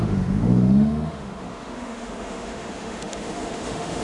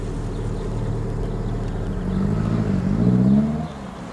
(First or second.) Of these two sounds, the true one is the second